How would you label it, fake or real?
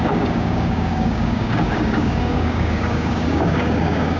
fake